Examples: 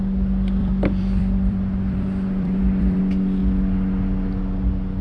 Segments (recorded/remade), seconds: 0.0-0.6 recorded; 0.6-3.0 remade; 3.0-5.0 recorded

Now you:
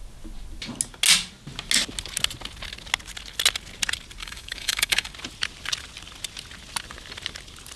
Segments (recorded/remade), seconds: 0.0-4.2 recorded; 4.2-5.1 remade; 5.1-7.8 recorded

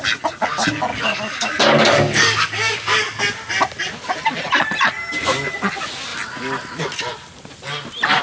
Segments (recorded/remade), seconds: 0.0-0.9 recorded; 0.9-3.2 remade; 3.2-8.2 recorded

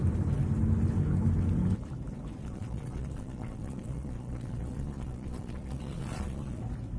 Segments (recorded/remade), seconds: 0.0-2.4 recorded; 2.4-6.6 remade; 6.6-7.0 recorded

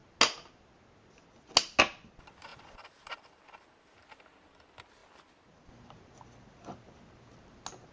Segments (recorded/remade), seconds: 0.0-2.5 recorded; 2.5-4.1 remade; 4.1-7.9 recorded

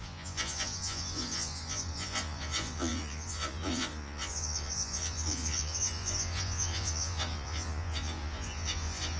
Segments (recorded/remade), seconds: 0.0-9.2 remade

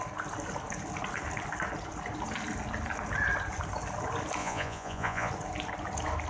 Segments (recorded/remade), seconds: 0.0-4.4 recorded; 4.4-5.3 remade; 5.3-6.3 recorded

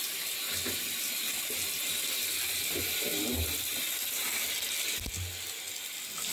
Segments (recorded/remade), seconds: 0.0-6.3 recorded